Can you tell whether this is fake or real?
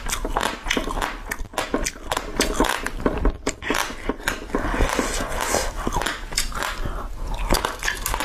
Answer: real